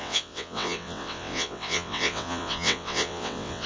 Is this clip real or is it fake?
fake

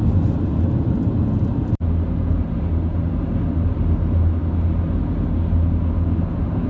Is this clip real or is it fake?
real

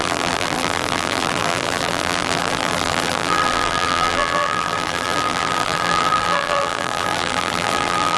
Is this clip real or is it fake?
fake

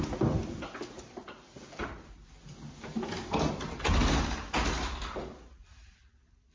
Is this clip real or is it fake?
real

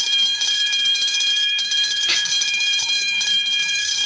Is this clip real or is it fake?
fake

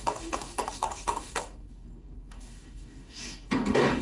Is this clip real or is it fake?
fake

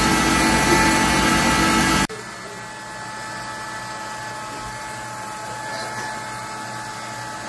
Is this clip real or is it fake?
real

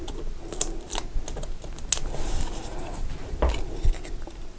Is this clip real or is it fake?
real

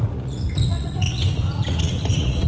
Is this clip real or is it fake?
fake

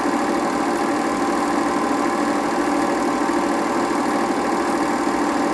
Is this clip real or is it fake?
real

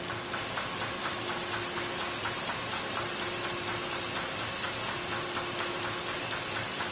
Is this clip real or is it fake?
real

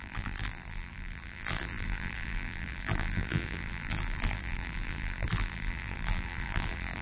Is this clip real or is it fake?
fake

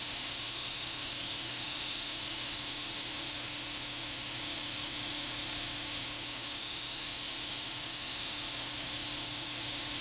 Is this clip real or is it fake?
fake